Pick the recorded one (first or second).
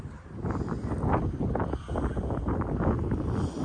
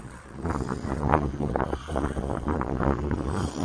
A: first